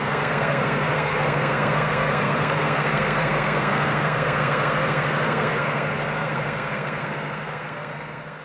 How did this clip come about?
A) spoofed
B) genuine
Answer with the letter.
A